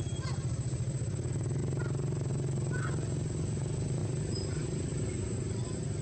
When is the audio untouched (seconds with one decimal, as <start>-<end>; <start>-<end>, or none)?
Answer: 0.0-1.6; 2.3-4.0; 5.5-6.0